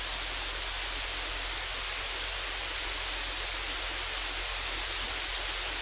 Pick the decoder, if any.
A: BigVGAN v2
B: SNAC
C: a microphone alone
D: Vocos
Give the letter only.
A